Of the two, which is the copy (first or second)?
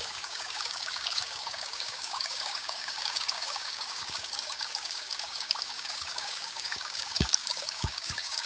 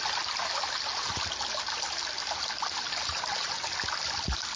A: first